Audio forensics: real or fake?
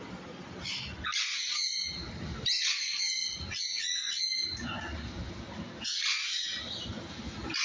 real